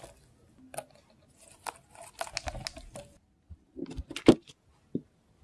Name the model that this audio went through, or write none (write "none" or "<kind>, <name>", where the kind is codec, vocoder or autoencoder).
none